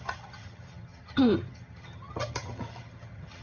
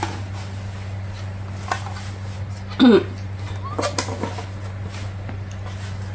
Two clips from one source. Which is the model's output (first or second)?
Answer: first